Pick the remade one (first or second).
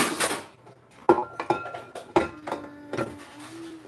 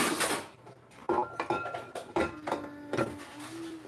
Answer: second